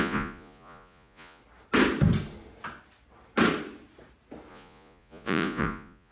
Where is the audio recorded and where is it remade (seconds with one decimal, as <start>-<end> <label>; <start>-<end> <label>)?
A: 0.0-1.4 remade; 1.4-4.5 recorded; 4.5-6.1 remade